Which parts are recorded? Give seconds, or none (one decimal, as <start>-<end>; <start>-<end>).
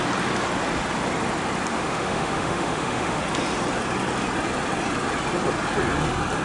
0.0-1.7; 3.2-6.4